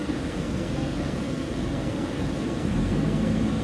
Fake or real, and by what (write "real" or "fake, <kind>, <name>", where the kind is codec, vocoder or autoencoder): fake, codec, SNAC